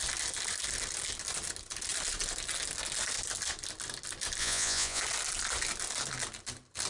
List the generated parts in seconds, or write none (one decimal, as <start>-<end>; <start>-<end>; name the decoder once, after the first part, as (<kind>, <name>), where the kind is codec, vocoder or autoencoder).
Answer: 4.4-5.0 (vocoder, Vocos)